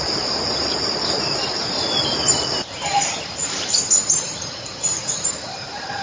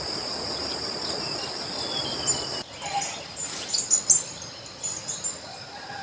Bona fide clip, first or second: second